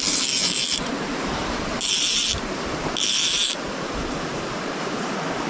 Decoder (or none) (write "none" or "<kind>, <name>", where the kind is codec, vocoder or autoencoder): vocoder, BigVGAN v2